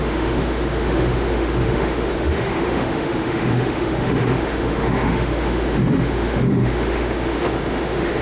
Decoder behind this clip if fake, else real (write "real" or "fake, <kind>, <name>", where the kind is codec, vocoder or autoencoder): fake, autoencoder, DAC-VAE